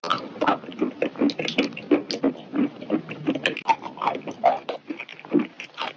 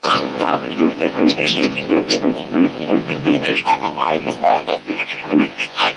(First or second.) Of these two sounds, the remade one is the second